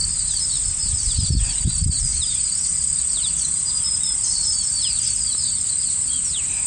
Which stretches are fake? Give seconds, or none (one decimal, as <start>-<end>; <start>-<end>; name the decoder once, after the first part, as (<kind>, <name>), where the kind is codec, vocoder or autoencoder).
none